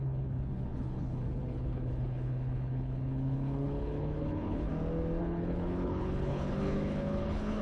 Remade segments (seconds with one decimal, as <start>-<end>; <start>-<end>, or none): 0.0-4.7; 5.2-7.6